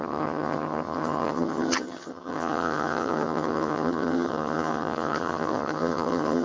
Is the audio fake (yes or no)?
yes